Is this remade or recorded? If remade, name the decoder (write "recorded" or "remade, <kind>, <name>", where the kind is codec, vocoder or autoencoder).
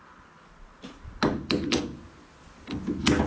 recorded